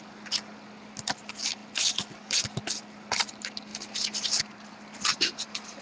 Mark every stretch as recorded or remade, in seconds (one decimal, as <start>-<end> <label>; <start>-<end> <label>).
0.0-5.1 recorded; 5.1-5.8 remade